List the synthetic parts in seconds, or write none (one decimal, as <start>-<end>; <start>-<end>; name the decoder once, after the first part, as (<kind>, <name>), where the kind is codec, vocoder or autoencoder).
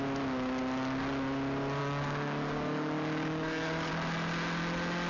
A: 1.8-3.9 (codec, DAC)